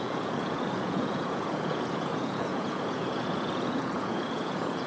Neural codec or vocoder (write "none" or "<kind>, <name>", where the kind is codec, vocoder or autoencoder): vocoder, Vocos